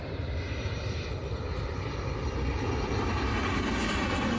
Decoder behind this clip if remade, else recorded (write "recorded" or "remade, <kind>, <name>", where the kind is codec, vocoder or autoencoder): recorded